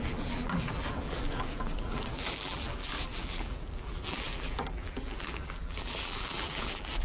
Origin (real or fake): fake